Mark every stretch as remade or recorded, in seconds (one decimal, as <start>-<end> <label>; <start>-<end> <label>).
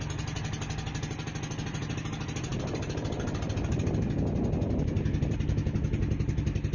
0.0-6.7 recorded